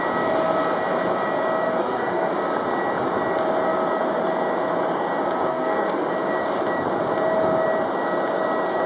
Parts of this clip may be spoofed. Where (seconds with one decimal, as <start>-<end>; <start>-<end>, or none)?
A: 1.8-2.3; 5.5-6.1

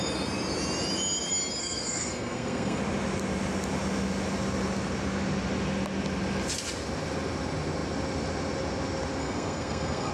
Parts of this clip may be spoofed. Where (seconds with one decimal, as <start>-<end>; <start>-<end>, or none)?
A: 1.6-2.8; 9.2-10.1

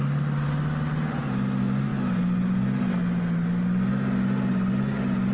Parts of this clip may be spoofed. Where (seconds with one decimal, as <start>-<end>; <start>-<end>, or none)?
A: none

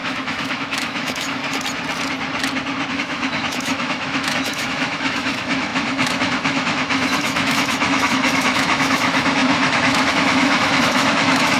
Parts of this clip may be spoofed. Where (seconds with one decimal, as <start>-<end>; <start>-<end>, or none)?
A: 0.0-1.4; 2.9-11.6

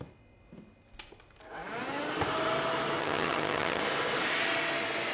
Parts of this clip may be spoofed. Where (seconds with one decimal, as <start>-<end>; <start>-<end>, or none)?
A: 3.0-3.8

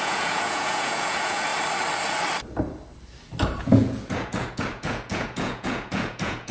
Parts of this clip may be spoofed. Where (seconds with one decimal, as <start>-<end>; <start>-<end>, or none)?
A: 0.0-1.5; 3.6-6.5